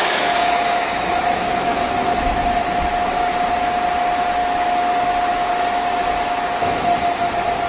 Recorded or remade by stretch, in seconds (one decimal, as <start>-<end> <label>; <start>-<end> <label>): 0.0-2.2 remade; 2.2-4.4 recorded; 4.4-7.2 remade; 7.2-7.7 recorded